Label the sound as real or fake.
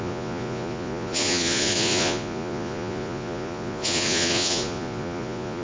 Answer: fake